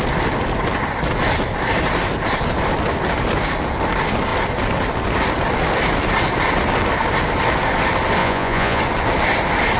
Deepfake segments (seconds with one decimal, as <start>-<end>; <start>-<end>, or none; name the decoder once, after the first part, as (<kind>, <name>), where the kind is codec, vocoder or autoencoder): 8.2-8.8 (vocoder, Vocos)